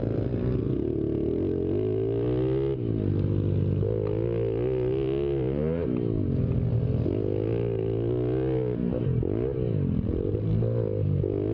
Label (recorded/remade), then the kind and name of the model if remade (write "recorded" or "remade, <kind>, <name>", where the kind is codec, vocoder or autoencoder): recorded